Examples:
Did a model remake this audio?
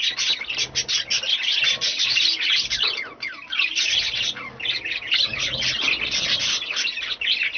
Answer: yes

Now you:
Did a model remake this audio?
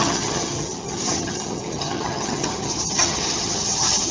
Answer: yes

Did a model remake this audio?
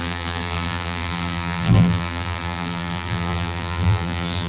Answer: yes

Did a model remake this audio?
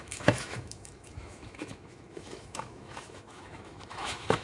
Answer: yes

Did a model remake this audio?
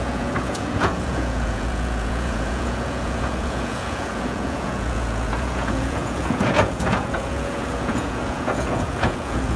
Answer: yes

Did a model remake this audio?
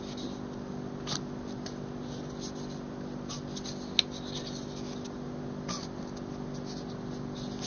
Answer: no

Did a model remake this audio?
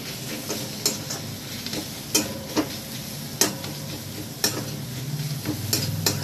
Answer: no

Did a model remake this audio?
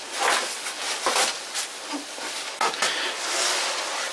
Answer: no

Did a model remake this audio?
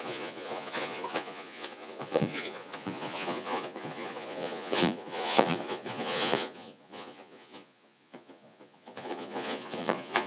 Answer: yes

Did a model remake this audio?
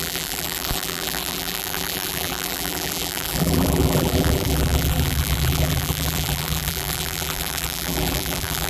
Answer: yes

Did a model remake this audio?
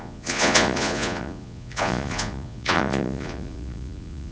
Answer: yes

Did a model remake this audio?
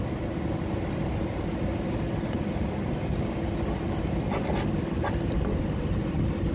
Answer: no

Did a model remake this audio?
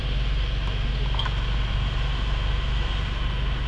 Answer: no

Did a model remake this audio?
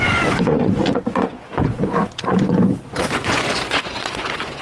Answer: yes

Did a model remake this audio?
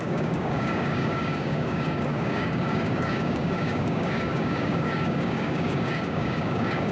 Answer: yes